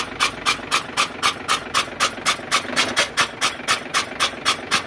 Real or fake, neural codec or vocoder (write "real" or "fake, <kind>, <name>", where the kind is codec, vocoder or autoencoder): real